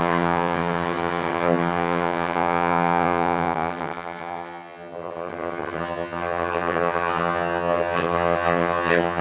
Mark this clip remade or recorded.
remade